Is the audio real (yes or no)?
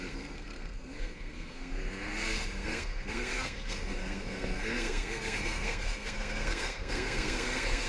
no